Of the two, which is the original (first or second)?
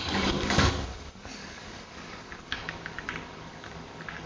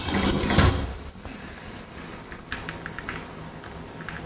second